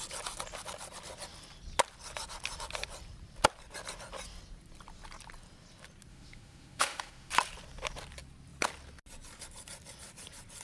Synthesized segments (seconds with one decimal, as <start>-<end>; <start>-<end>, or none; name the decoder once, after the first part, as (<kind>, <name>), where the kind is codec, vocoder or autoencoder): 6.1-7.3 (autoencoder, DAC-VAE)